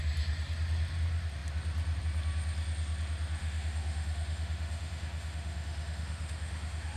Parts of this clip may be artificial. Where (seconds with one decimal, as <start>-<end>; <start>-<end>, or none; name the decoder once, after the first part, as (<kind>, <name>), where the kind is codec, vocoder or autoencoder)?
3.4-7.0 (autoencoder, DAC-VAE)